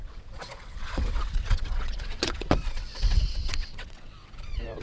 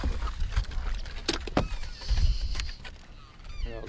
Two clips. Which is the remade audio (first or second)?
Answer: first